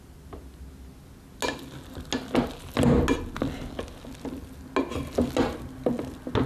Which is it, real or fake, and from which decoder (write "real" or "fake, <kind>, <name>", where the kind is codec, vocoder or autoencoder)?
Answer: real